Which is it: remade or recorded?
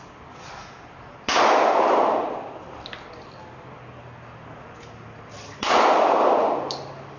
recorded